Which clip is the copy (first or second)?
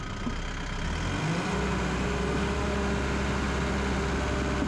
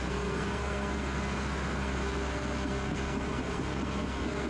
second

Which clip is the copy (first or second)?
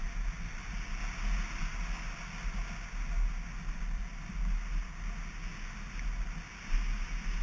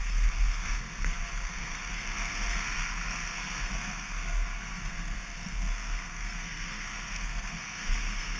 second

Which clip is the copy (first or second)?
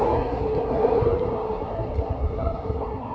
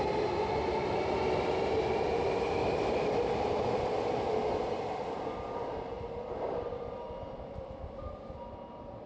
first